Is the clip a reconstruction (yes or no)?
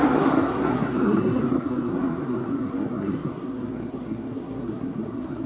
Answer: yes